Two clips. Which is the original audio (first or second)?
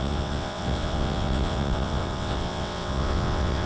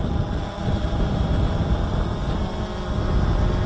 second